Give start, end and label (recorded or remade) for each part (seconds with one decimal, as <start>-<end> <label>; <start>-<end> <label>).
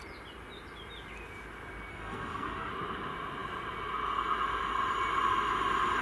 0.0-1.9 recorded; 1.9-2.7 remade; 2.7-6.0 recorded